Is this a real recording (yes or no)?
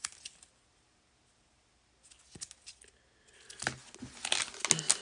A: yes